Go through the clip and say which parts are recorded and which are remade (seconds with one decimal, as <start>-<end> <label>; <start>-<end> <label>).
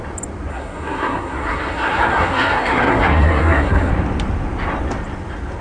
0.0-0.5 recorded; 0.5-3.9 remade; 3.9-5.6 recorded